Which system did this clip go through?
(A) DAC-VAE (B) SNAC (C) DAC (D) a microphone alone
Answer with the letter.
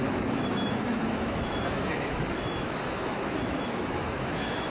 A